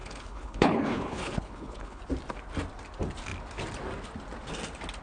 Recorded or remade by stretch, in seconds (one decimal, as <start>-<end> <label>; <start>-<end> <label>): 0.0-2.0 remade; 2.0-5.0 recorded